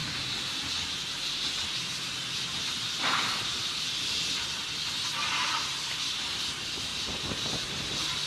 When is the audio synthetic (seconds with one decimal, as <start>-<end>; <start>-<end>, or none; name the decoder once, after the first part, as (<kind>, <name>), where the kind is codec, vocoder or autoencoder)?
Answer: 0.0-3.9 (vocoder, BigVGAN v2); 6.9-8.3